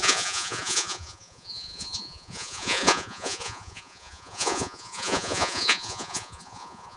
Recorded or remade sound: remade